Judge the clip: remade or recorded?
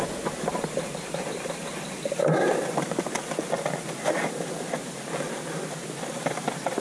recorded